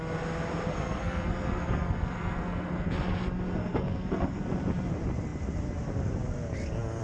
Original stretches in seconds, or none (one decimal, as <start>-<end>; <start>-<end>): 0.0-0.7; 2.9-3.6; 4.4-7.0